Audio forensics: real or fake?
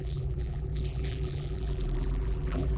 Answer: fake